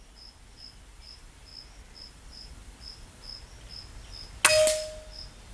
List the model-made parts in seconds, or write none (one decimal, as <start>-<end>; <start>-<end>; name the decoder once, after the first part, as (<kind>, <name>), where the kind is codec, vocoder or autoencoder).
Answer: 0.0-1.5 (vocoder, BigVGAN v2); 2.1-3.3